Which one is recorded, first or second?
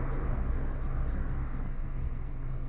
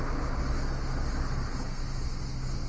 second